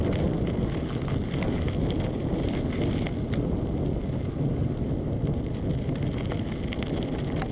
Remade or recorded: recorded